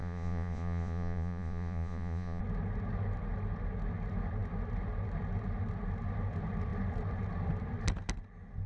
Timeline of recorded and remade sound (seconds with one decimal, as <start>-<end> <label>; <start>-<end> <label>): 0.0-2.4 remade; 2.4-8.7 recorded